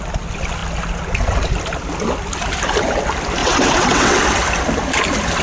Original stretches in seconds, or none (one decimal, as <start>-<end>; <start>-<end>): 0.0-3.4; 4.2-5.4